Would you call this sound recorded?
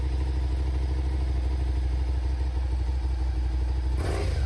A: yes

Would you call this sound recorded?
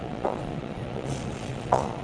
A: no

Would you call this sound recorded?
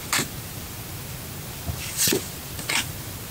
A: no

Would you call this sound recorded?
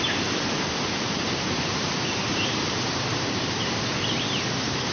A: no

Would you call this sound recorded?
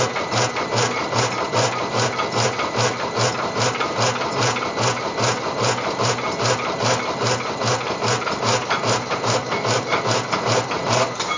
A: yes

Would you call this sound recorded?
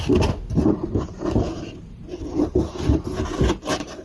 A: no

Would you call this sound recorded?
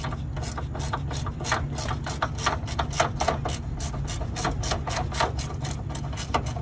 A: yes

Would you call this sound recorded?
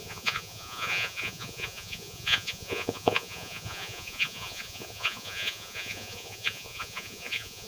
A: no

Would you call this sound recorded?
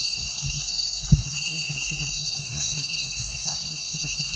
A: no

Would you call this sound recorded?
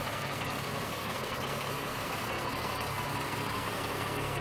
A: no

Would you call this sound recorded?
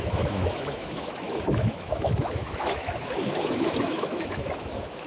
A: no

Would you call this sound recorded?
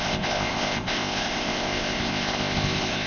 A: no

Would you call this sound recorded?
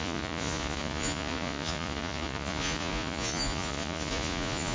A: no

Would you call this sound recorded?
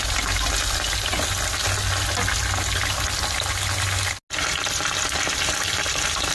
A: yes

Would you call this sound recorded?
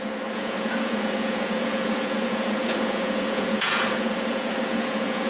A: no